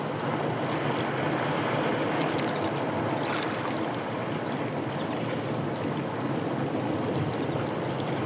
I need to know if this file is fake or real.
real